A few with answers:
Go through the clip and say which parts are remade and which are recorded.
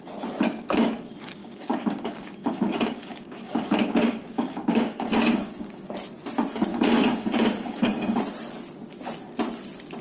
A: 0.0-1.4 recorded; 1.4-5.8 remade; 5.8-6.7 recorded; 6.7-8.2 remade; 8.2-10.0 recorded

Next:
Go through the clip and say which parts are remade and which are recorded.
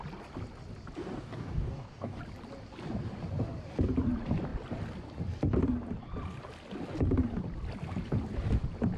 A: 0.0-1.0 recorded; 1.0-2.2 remade; 2.2-9.0 recorded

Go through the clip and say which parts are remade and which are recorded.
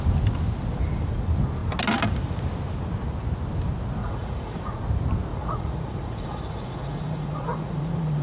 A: 0.0-4.0 recorded; 4.0-4.8 remade; 4.8-5.3 recorded; 5.3-8.2 remade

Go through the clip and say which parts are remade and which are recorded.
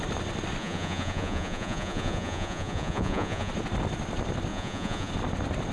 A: 0.0-0.6 recorded; 0.6-3.5 remade; 3.5-4.5 recorded; 4.5-5.1 remade; 5.1-5.7 recorded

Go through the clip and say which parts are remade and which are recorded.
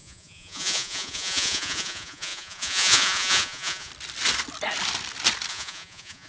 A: 0.0-3.9 remade; 3.9-5.5 recorded; 5.5-6.3 remade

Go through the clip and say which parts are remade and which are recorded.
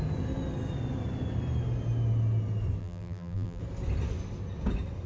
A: 0.0-2.8 recorded; 2.8-3.6 remade; 3.6-5.1 recorded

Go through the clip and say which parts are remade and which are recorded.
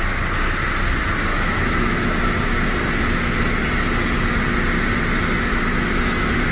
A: 0.0-1.3 recorded; 1.3-2.1 remade; 2.1-5.5 recorded; 5.5-6.5 remade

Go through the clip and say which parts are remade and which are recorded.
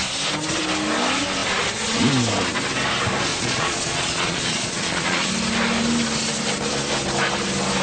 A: 0.0-3.3 recorded; 3.3-5.3 remade; 5.3-7.8 recorded